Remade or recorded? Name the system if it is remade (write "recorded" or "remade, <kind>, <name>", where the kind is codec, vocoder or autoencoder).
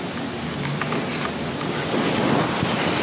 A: recorded